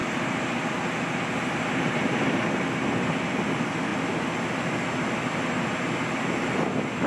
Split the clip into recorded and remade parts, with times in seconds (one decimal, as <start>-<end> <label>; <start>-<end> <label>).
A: 0.0-7.1 recorded